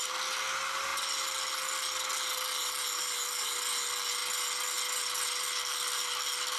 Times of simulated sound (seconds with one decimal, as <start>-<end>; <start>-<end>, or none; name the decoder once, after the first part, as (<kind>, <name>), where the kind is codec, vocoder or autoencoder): none